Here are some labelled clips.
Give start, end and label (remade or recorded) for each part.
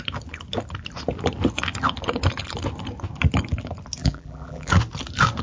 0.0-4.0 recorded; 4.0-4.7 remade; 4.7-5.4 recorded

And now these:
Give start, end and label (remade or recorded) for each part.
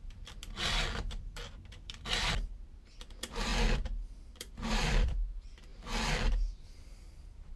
0.0-7.6 remade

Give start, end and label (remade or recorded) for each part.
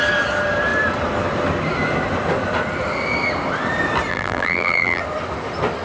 0.0-4.1 recorded; 4.1-5.0 remade; 5.0-5.8 recorded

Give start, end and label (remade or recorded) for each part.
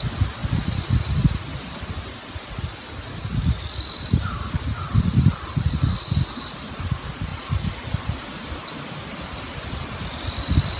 0.0-10.8 recorded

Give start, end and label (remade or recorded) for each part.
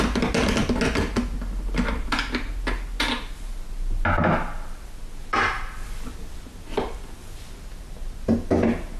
0.0-9.0 recorded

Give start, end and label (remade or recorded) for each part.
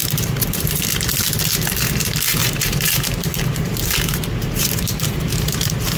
0.0-0.8 remade; 0.8-2.4 recorded; 2.4-6.0 remade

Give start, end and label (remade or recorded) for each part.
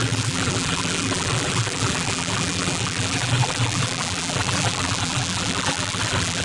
0.0-6.4 remade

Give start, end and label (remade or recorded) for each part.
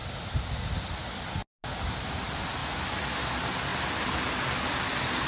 0.0-1.4 remade; 1.4-2.1 recorded; 2.1-2.6 remade; 2.6-3.3 recorded; 3.3-3.7 remade; 3.7-4.3 recorded; 4.3-5.3 remade